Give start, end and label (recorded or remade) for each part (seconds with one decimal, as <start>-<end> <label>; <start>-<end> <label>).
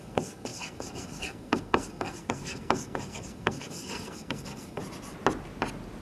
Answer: 0.0-4.8 remade; 4.8-6.0 recorded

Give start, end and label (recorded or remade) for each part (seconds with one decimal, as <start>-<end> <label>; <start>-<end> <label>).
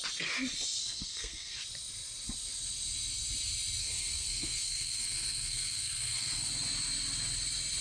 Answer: 0.0-0.8 recorded; 0.8-1.6 remade; 1.6-3.8 recorded; 3.8-6.5 remade; 6.5-7.8 recorded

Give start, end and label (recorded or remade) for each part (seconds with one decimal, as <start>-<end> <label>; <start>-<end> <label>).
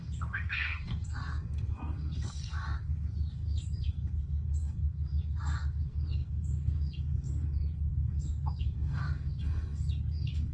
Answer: 0.0-10.5 remade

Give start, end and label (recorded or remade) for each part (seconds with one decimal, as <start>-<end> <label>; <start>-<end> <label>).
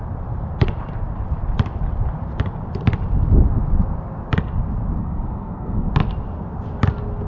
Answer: 0.0-5.0 recorded; 5.0-5.9 remade; 5.9-7.3 recorded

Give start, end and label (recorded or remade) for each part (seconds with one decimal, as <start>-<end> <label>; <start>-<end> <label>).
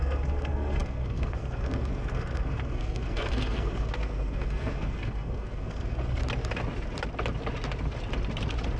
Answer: 0.0-6.2 remade; 6.2-8.8 recorded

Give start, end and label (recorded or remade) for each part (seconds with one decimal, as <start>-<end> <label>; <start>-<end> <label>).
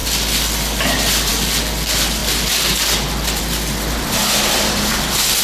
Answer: 0.0-5.4 recorded